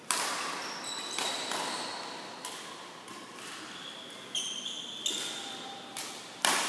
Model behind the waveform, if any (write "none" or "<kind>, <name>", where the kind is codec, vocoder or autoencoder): none